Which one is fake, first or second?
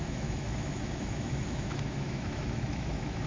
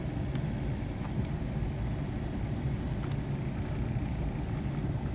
first